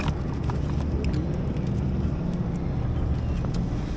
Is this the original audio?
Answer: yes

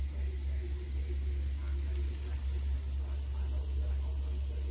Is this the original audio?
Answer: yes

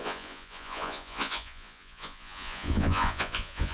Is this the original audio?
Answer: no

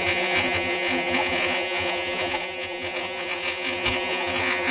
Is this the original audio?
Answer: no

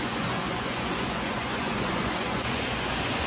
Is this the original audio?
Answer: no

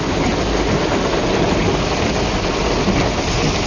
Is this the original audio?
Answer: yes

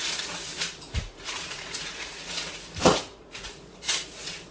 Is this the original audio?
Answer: no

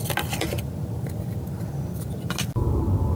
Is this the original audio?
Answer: yes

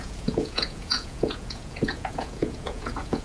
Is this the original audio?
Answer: no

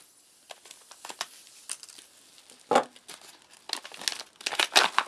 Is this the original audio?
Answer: yes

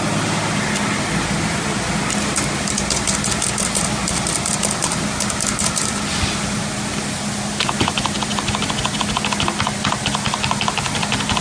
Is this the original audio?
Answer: yes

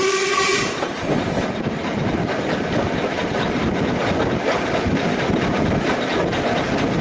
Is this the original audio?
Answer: yes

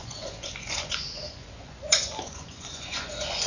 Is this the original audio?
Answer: no